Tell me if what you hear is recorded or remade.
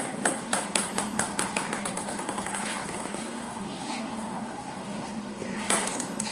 remade